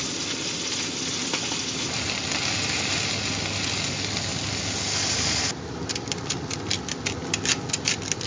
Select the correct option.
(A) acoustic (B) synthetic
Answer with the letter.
A